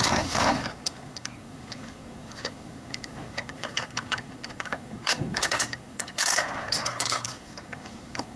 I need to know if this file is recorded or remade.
remade